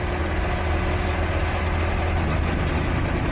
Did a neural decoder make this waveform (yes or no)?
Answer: no